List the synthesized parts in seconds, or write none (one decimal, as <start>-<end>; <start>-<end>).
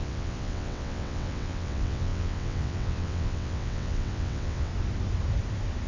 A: 0.0-4.7